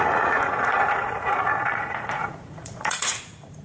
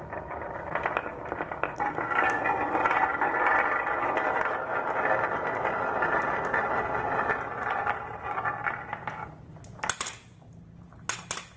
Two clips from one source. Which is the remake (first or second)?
first